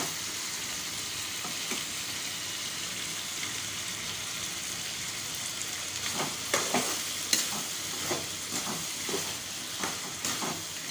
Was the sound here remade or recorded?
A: recorded